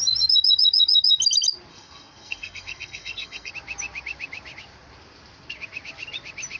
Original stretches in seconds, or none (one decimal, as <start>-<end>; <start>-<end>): 0.0-1.7; 3.5-6.6